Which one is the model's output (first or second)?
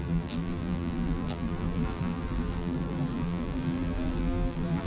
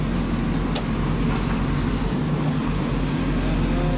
first